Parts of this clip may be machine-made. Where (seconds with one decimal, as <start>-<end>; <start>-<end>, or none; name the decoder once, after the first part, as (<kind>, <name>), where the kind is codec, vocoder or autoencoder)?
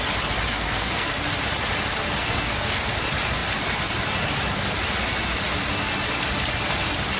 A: 0.5-1.1 (codec, SNAC); 2.2-2.7